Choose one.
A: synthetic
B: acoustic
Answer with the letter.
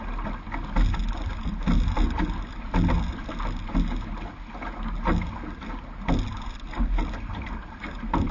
B